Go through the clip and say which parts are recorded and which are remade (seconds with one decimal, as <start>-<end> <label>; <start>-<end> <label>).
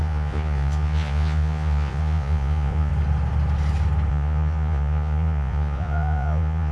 0.0-2.9 remade; 2.9-4.1 recorded; 4.1-6.7 remade